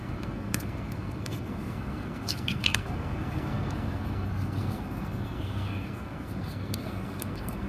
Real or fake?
fake